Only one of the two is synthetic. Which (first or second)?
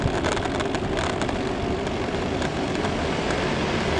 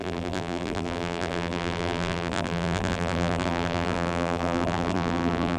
second